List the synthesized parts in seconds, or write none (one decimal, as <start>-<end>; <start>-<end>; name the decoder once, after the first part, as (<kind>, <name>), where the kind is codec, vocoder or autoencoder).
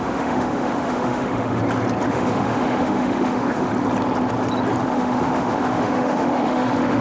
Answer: 0.0-1.6 (autoencoder, DAC-VAE); 2.1-3.7; 4.8-7.0